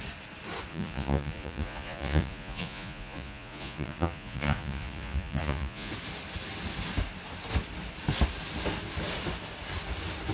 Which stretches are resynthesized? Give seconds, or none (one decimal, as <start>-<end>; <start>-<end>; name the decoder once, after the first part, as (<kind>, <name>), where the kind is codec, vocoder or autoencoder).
0.7-5.9 (vocoder, Vocos)